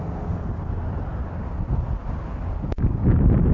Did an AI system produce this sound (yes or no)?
no